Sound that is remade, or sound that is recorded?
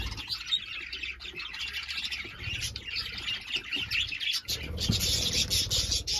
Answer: recorded